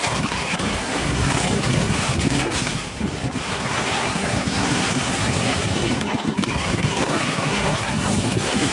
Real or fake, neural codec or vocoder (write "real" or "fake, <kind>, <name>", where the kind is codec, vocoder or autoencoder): fake, codec, SNAC